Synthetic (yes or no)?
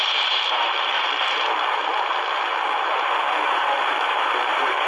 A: yes